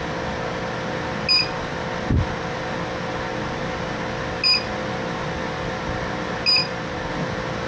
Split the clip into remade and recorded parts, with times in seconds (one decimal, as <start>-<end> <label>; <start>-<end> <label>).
0.0-6.6 recorded; 6.6-7.1 remade; 7.1-7.7 recorded

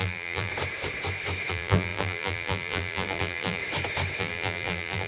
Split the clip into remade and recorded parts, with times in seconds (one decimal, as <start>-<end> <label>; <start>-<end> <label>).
0.0-0.5 remade; 0.5-1.5 recorded; 1.5-3.6 remade; 3.6-4.2 recorded; 4.2-5.1 remade